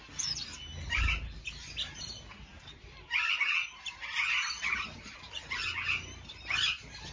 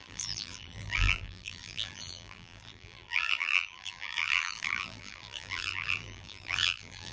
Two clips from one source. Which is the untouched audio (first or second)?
first